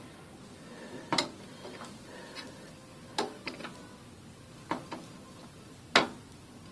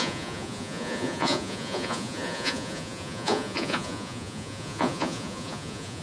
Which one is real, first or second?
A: first